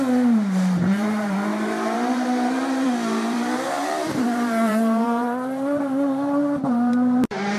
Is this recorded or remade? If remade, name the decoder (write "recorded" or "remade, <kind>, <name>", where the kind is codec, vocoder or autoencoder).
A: remade, vocoder, BigVGAN v2